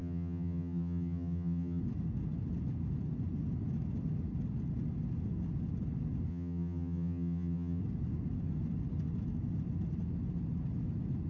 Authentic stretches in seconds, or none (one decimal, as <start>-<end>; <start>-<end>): 1.8-6.3; 7.8-11.3